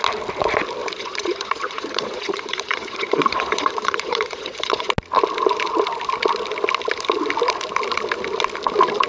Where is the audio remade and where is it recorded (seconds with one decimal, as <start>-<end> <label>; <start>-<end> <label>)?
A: 0.0-0.8 recorded; 0.8-4.9 remade; 4.9-9.1 recorded